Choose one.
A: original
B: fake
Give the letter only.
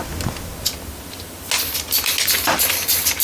A